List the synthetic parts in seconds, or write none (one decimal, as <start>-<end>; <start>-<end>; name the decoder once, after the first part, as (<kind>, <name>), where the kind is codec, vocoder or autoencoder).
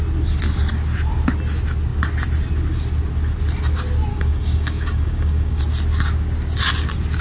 4.1-5.6 (codec, DAC)